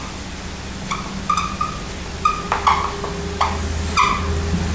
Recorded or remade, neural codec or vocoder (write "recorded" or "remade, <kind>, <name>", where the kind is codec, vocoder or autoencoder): recorded